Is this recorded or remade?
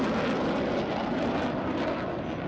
recorded